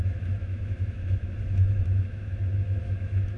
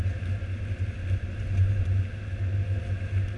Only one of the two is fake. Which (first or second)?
first